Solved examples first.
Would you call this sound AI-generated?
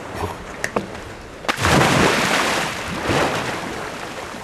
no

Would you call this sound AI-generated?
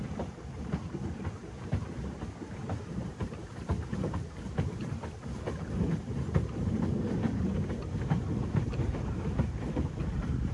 yes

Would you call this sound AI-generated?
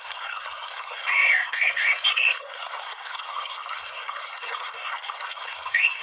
yes